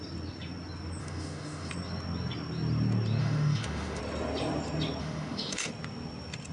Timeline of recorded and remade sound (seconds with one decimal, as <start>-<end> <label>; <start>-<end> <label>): 0.0-1.0 recorded; 1.0-1.7 remade; 1.7-3.2 recorded; 3.2-4.0 remade; 4.0-5.0 recorded; 5.0-5.7 remade; 5.7-6.5 recorded